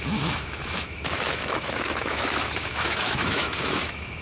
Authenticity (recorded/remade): remade